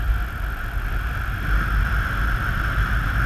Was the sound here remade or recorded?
recorded